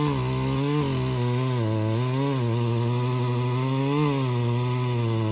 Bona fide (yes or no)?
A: yes